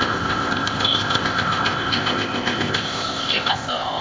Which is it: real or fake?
fake